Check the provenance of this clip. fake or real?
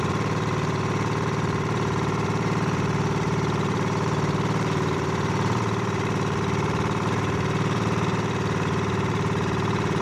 fake